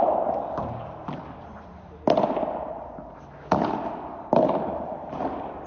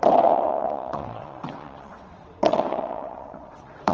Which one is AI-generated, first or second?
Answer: second